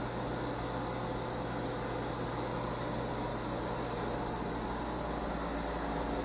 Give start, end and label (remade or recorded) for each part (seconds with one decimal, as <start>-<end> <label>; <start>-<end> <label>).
0.0-6.2 recorded